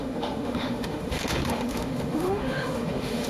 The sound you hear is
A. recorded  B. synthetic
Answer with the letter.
B